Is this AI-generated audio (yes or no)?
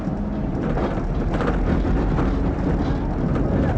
no